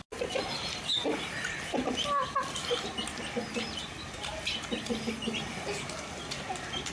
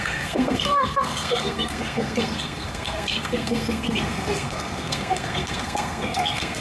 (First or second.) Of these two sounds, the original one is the first